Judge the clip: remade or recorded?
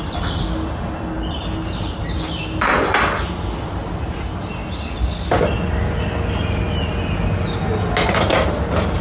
recorded